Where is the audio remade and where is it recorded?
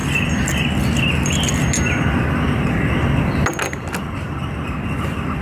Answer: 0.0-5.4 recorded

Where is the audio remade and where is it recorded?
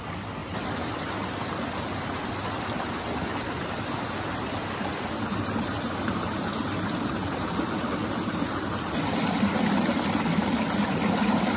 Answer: 0.0-11.6 recorded